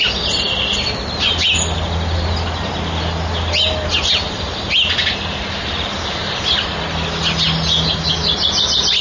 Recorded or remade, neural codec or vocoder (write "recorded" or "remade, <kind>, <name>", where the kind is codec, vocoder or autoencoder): recorded